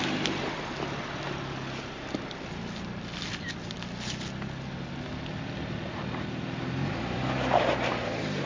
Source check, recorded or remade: recorded